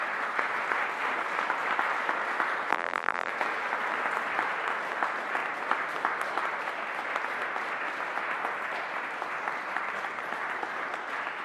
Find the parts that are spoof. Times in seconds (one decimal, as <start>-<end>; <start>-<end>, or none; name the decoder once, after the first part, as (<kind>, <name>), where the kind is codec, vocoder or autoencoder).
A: 2.7-3.3 (vocoder, BigVGAN v2)